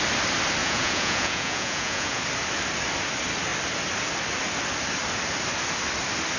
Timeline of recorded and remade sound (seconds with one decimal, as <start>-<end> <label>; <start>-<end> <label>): 0.0-0.6 recorded; 0.6-2.2 remade; 2.2-6.4 recorded